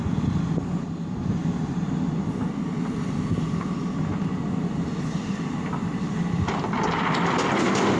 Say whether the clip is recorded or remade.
recorded